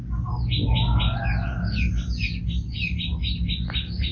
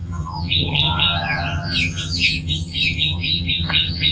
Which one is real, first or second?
first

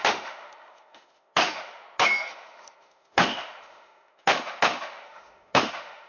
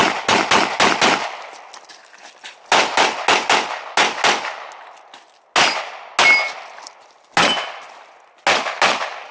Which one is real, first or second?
second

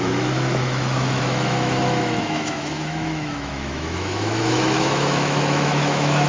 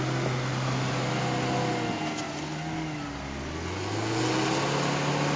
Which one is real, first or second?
second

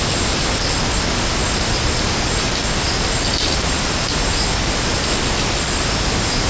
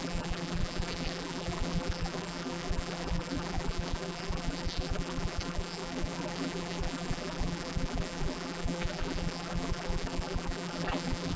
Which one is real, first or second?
first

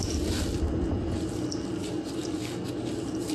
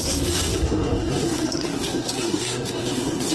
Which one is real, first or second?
first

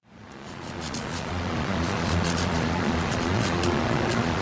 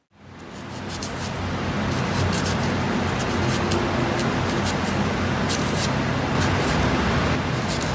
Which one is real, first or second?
second